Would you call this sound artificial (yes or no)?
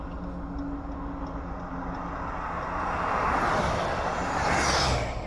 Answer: no